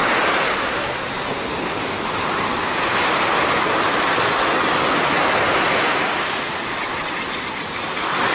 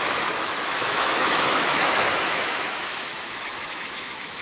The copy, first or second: second